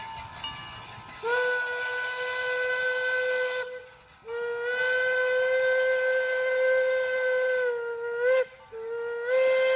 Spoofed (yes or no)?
no